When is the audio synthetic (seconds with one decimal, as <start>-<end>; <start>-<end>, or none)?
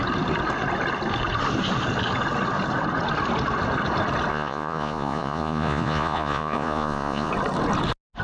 4.3-7.3